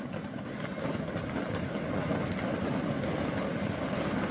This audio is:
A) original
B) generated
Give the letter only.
A